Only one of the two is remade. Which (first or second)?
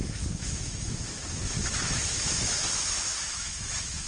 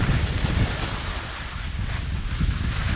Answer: first